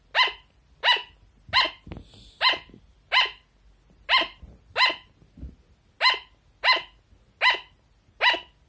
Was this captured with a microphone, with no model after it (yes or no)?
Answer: yes